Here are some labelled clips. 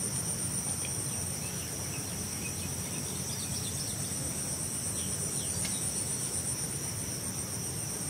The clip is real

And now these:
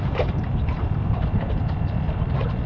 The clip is fake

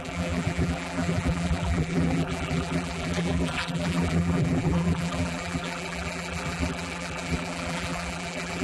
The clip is fake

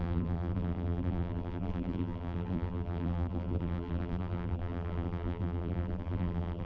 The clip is fake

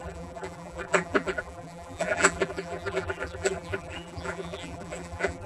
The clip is fake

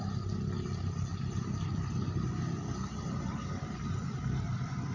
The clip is real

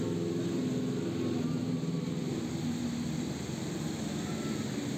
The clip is real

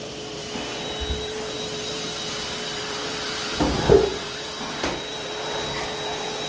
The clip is fake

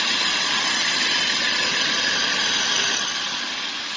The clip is real